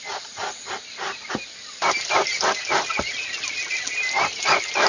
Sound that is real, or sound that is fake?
real